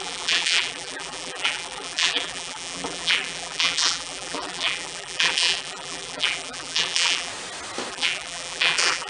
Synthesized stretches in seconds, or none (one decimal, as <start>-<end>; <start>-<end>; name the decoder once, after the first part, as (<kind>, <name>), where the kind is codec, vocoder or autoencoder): 0.0-7.3 (vocoder, BigVGAN v2); 7.9-9.1